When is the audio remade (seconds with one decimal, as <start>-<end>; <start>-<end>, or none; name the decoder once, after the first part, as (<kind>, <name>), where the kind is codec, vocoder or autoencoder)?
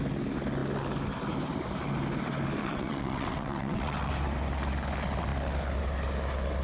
2.6-4.1 (vocoder, WaveNeXt)